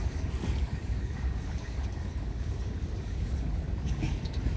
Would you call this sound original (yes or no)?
no